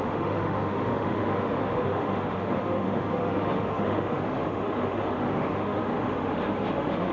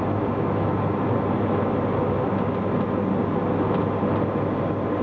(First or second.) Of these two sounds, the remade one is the first